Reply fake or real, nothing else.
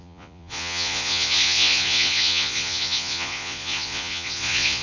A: fake